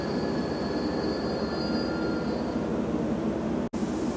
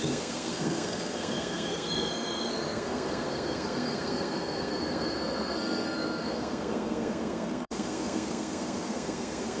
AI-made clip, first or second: second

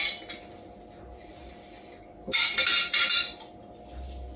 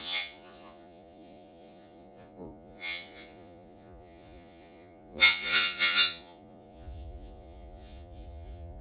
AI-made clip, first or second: second